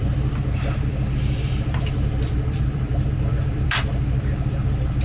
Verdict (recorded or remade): remade